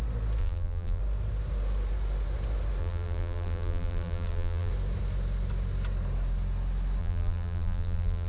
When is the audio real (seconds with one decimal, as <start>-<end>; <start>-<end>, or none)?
0.0-0.4; 1.0-2.8; 4.7-7.0